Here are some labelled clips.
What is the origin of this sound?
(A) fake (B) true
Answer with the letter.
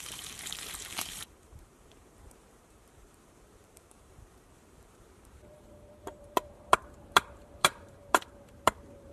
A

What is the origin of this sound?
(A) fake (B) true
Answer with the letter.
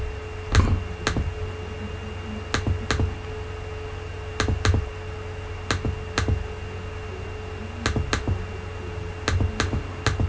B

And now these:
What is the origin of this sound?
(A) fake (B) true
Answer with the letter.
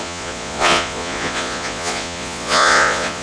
A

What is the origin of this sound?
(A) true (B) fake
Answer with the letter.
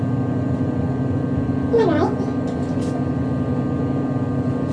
A